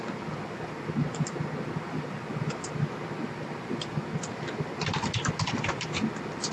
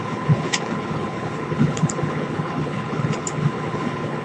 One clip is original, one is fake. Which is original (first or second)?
first